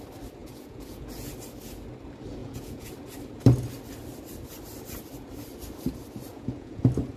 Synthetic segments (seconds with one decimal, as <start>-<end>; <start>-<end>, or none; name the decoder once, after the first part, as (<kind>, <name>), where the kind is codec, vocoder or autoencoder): 0.4-1.3 (vocoder, Vocos); 2.4-2.9; 6.3-6.8